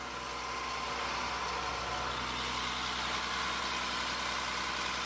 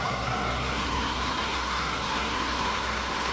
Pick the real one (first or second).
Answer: first